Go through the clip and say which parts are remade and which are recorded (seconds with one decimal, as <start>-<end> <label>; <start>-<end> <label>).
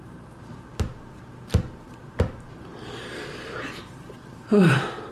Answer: 0.0-0.7 remade; 0.7-1.2 recorded; 1.2-5.1 remade